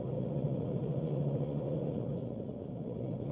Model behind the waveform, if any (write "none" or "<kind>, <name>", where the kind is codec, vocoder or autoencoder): vocoder, Vocos